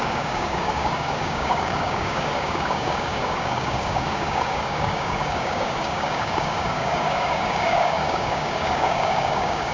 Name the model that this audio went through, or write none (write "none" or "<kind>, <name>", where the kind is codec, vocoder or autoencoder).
codec, DAC